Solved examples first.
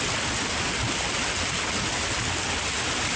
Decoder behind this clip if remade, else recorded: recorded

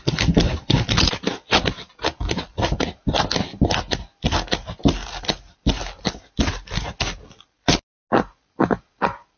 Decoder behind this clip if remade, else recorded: recorded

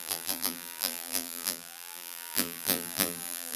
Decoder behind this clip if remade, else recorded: remade, vocoder, BigVGAN v2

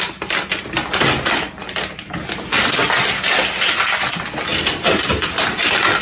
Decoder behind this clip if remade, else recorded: recorded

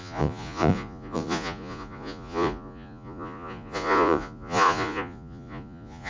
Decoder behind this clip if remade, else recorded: remade, vocoder, Vocos